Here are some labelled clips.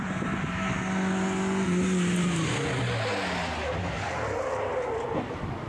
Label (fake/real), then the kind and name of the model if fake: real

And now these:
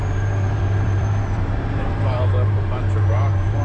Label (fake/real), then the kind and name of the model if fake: fake, vocoder, BigVGAN v2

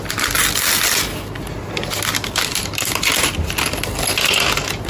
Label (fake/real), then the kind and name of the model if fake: real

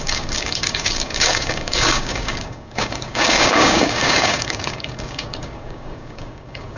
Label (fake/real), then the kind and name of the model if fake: fake, codec, DAC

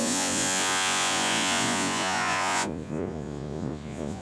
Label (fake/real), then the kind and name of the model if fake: fake, vocoder, Vocos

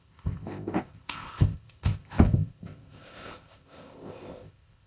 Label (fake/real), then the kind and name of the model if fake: fake, codec, ZipCodec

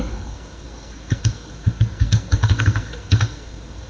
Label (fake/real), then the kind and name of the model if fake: fake, codec, SNAC